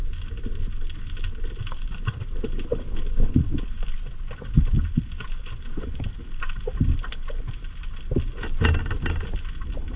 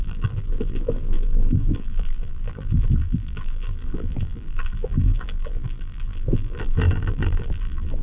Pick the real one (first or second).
first